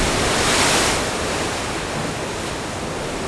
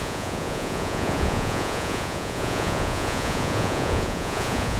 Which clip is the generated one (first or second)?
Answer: second